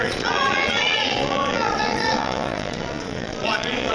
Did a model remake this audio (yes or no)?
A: yes